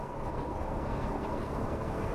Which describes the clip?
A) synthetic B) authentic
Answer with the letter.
A